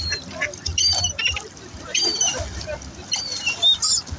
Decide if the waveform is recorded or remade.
recorded